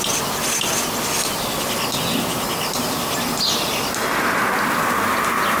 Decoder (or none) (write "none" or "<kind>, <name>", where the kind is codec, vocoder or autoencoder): none